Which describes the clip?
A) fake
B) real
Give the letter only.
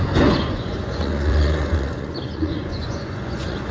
A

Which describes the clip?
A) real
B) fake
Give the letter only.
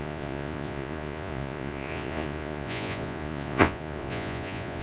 B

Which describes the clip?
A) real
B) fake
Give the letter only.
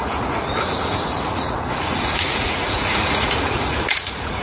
B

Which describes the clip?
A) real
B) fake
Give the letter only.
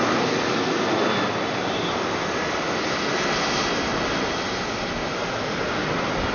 A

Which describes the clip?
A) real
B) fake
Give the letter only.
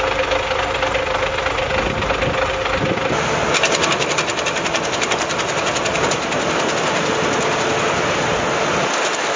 A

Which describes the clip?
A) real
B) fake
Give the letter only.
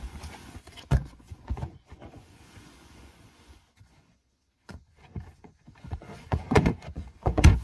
B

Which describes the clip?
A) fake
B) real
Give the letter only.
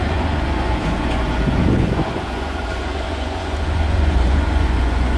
A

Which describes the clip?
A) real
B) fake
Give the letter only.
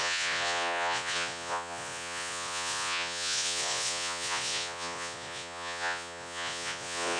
B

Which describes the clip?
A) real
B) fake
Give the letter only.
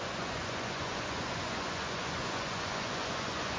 B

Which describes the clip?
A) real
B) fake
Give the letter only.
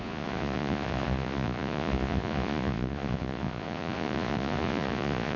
B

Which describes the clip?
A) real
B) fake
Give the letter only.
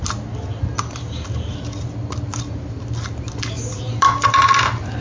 A